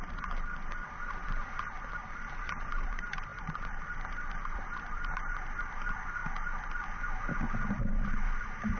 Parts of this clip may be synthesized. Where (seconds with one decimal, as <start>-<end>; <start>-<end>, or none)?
0.0-6.2; 7.9-8.8

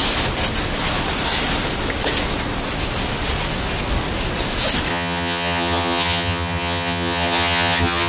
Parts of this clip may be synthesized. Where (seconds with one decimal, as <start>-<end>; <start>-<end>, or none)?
4.9-8.1

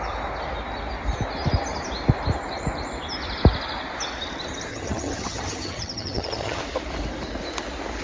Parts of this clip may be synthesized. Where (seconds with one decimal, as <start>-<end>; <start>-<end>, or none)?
4.7-6.6

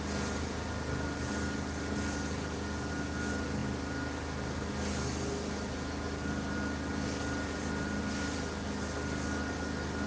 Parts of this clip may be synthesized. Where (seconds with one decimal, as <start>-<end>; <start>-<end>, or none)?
none

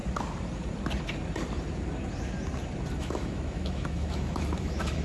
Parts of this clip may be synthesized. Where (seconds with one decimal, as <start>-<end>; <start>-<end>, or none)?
3.0-5.0

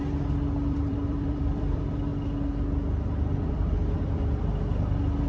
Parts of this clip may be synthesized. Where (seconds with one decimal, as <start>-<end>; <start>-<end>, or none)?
0.0-2.1; 3.5-4.6

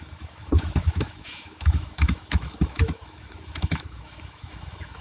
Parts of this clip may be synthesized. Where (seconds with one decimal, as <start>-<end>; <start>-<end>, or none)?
0.0-5.0

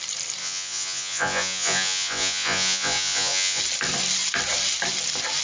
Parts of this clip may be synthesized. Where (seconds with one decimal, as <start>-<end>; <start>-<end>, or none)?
0.4-3.6